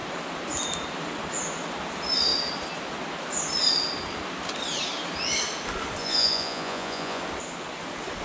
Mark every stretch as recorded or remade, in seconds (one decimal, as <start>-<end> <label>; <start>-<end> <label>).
0.0-6.0 recorded; 6.0-7.2 remade; 7.2-8.2 recorded